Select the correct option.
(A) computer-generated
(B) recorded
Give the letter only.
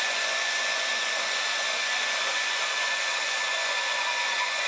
A